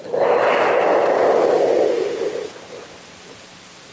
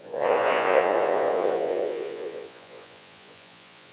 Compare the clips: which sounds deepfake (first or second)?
second